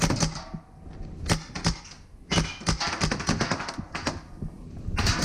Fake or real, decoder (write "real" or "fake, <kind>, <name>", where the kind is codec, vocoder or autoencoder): real